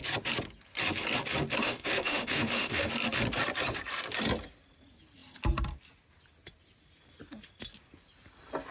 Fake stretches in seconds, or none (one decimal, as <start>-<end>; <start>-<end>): 1.6-2.9